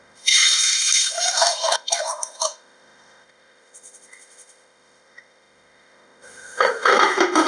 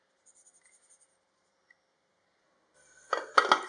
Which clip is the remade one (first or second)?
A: first